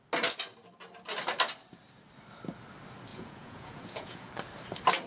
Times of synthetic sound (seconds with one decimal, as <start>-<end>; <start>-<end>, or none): 3.1-4.3